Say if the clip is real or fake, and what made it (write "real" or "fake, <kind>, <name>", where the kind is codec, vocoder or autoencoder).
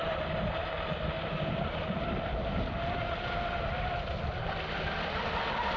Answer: real